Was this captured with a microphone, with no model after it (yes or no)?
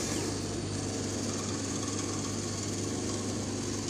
yes